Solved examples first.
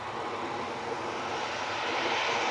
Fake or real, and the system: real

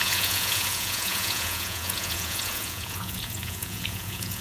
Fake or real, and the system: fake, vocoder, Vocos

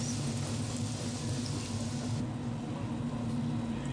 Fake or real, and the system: real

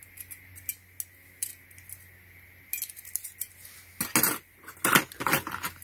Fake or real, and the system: real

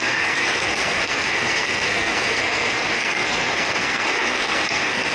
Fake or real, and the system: fake, codec, SNAC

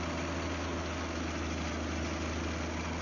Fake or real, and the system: real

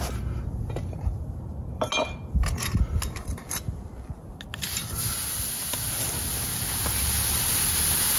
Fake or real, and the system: real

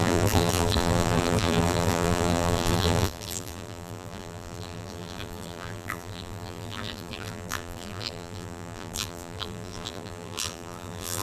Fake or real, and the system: fake, vocoder, BigVGAN v2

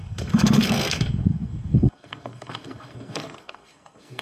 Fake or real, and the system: fake, codec, SNAC